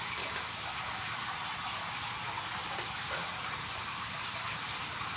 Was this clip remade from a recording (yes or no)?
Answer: no